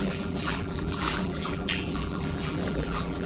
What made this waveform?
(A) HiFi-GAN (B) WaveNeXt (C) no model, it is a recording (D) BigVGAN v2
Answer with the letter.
D